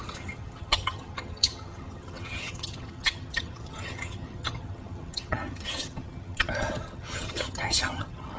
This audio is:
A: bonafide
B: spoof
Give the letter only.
B